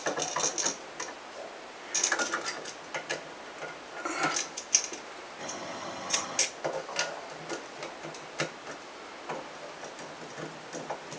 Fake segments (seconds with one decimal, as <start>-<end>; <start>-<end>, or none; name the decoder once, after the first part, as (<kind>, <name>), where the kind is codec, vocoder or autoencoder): 5.4-6.4 (vocoder, HiFi-GAN)